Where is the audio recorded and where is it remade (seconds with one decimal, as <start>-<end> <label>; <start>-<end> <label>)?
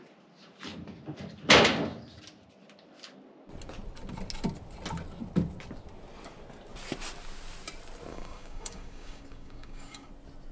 0.0-8.1 recorded; 8.1-10.1 remade; 10.1-10.5 recorded